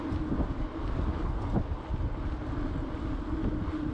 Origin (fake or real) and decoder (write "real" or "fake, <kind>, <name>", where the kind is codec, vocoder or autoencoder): real